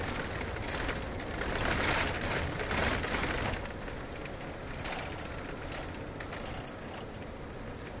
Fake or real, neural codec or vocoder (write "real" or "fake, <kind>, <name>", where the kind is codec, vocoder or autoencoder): real